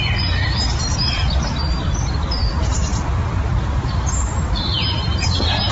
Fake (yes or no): yes